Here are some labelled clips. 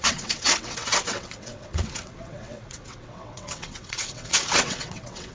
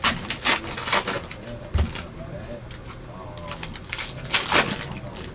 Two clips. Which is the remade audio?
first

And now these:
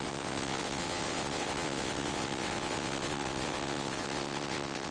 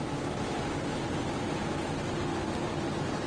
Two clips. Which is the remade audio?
first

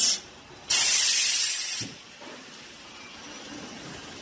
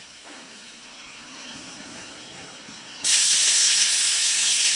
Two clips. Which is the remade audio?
second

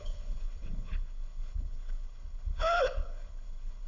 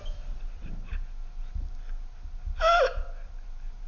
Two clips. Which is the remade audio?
first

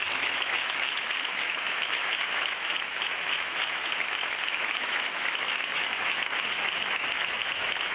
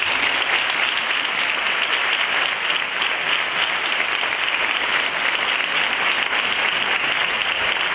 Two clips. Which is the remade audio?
first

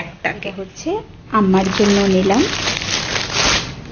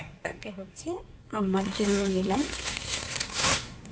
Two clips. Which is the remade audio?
second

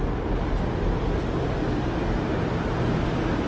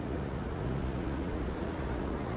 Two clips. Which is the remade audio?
second